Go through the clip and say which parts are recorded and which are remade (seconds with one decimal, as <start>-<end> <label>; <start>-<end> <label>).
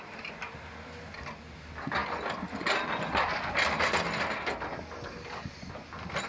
0.0-6.3 recorded